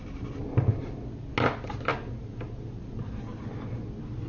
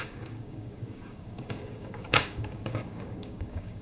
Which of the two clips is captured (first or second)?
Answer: first